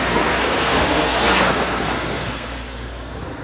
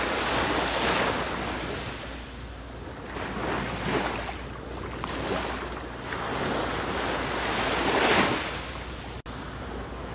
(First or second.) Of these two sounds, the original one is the second